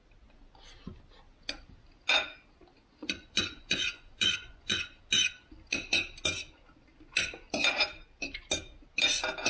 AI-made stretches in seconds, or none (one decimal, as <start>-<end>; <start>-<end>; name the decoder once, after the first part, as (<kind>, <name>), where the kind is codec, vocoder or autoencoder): 3.0-5.0 (vocoder, Vocos)